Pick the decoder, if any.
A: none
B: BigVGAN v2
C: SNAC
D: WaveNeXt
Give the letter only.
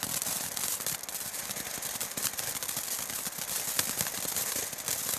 A